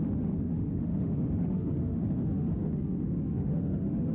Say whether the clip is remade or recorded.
remade